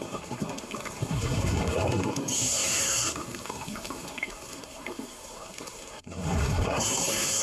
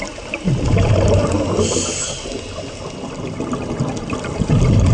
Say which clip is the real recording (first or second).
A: second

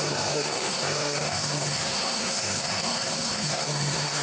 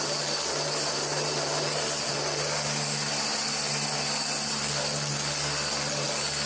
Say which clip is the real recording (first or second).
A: second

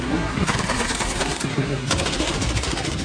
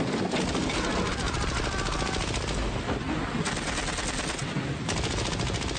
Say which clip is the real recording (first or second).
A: second